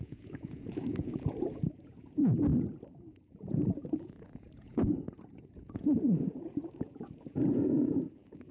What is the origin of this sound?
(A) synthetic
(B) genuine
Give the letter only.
A